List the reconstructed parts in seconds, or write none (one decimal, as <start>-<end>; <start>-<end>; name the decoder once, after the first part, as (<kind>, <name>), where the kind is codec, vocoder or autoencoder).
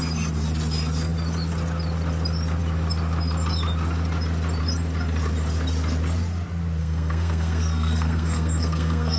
6.8-9.2 (codec, SNAC)